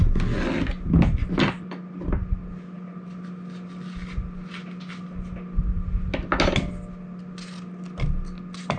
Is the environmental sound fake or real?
real